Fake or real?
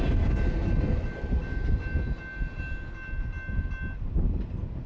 real